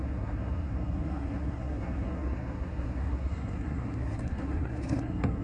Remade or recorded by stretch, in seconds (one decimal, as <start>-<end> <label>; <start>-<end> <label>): 0.0-5.4 remade